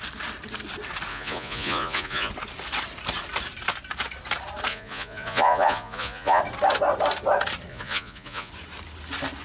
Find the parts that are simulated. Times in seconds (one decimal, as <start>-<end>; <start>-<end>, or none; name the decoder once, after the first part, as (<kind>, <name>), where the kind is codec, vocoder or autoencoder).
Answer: 1.1-2.3 (vocoder, Vocos); 4.7-6.4; 7.7-8.5